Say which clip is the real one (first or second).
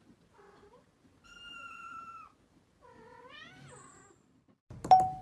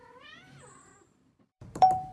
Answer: first